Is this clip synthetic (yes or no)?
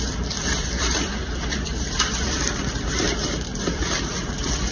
yes